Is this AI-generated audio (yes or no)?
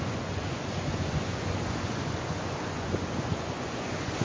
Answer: yes